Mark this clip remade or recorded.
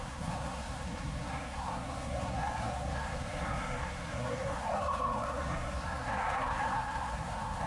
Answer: remade